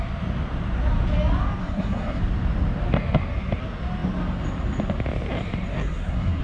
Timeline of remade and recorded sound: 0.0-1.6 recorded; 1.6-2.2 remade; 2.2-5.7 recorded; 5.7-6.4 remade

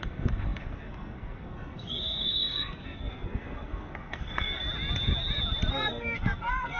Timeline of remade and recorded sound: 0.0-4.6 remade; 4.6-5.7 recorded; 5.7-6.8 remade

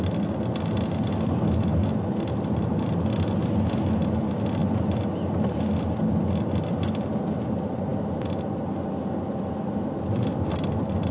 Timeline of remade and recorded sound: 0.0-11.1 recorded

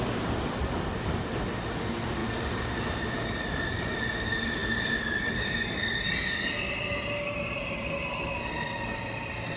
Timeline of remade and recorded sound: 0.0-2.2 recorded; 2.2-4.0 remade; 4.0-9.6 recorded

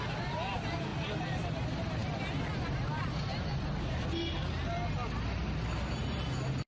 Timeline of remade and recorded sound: 0.0-6.7 recorded